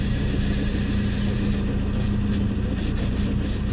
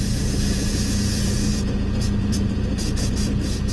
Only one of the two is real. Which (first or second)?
first